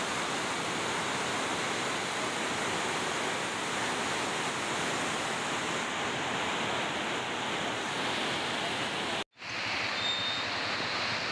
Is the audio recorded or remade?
recorded